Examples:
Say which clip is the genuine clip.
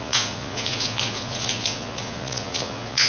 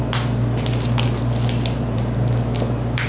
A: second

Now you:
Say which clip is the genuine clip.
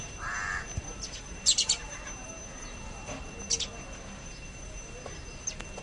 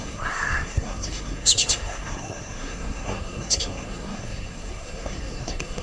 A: first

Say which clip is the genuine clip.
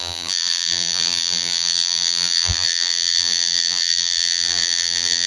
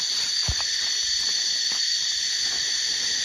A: second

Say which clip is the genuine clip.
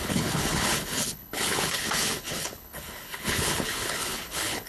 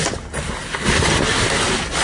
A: second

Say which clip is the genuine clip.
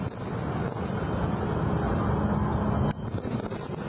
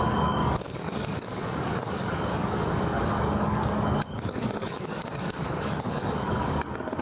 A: first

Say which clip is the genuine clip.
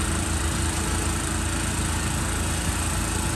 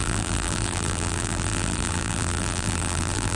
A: first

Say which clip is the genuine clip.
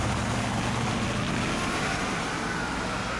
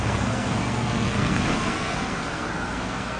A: first